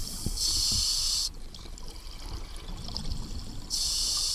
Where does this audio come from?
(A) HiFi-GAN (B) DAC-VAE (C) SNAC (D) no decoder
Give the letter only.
D